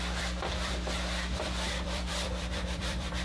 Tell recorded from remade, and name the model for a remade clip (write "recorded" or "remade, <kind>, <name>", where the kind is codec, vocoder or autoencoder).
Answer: remade, vocoder, BigVGAN v2